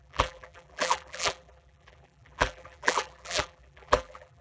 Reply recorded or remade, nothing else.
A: remade